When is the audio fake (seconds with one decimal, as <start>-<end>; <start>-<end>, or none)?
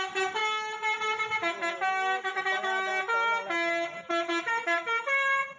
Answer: 0.0-0.4; 2.4-2.9; 4.4-5.6